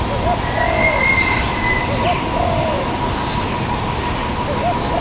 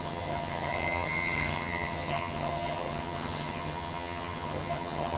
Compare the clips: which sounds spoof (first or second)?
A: second